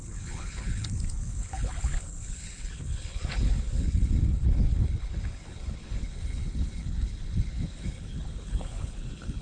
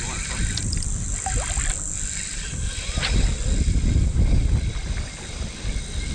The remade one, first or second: first